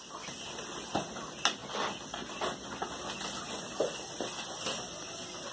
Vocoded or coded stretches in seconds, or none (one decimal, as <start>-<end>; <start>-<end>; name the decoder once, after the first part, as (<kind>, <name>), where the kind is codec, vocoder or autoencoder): none

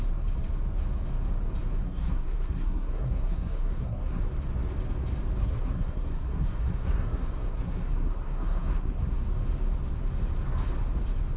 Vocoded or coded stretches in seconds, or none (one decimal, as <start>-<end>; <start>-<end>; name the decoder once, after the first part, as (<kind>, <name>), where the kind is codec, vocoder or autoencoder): 1.8-4.2 (codec, SNAC); 5.4-9.2

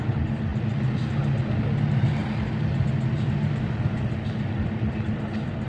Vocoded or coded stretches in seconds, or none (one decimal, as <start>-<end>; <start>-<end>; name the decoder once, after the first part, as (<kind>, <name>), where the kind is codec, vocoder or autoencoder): none

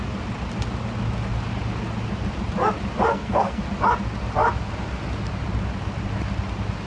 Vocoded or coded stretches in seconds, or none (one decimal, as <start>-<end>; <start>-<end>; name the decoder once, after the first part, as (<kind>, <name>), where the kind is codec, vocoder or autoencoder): 3.1-3.6 (codec, SNAC)